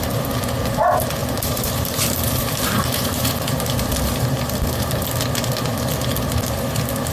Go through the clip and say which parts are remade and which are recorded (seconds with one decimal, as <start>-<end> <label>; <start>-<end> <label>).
0.0-1.2 recorded; 1.2-5.0 remade; 5.0-7.1 recorded